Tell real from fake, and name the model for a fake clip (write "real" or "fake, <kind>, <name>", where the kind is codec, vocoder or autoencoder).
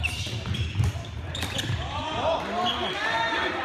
real